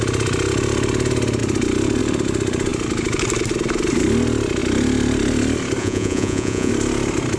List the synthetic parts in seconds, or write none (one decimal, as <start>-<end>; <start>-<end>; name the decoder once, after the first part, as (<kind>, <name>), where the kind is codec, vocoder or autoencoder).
5.8-6.7 (vocoder, Vocos)